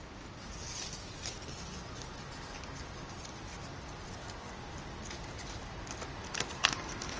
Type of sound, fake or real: real